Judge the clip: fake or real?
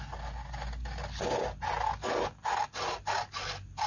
real